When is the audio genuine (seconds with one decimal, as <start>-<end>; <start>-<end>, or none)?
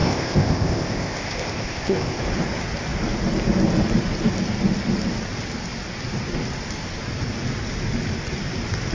2.2-8.9